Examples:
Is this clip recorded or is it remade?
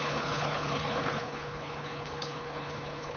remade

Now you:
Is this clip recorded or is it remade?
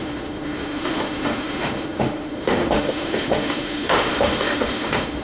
remade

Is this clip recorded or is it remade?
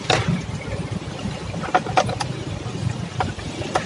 recorded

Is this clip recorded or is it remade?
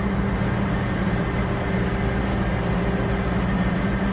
recorded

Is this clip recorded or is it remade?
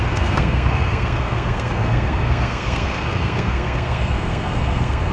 remade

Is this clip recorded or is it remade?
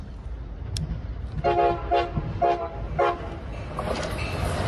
recorded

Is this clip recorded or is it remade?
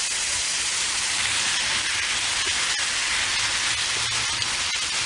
recorded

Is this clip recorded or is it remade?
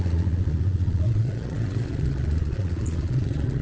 remade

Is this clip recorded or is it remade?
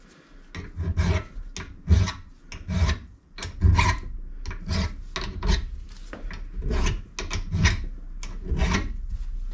recorded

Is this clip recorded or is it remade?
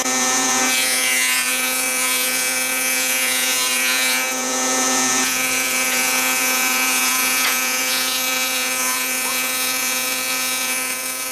remade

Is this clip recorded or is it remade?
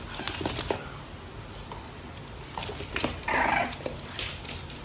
recorded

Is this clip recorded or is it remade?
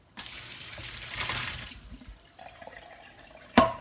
remade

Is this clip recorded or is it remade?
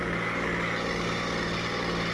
recorded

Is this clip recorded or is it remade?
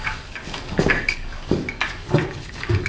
remade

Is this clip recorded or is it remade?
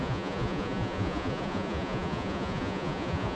remade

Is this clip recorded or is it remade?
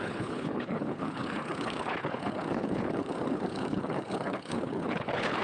remade